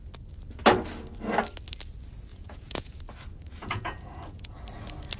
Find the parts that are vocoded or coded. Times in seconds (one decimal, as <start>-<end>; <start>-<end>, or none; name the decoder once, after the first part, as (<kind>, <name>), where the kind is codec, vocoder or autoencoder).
2.3-3.0 (vocoder, Vocos); 3.6-4.5